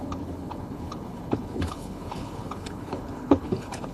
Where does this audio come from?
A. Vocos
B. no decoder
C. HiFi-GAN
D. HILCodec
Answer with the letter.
D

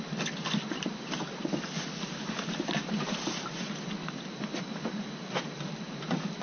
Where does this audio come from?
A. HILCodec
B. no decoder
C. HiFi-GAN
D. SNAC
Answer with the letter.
B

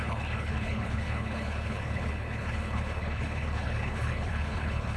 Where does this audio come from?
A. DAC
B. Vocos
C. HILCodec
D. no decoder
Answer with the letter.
C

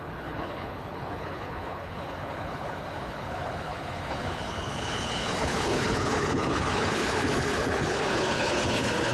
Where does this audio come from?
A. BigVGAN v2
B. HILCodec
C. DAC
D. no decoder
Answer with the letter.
B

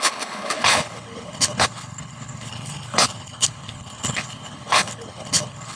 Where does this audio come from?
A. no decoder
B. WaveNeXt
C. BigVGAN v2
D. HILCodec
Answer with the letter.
D